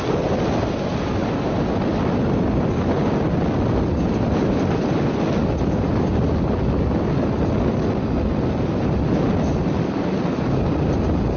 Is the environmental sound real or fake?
real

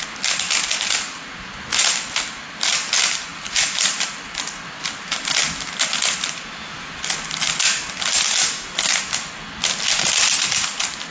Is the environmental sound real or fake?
real